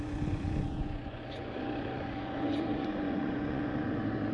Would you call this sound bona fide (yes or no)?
no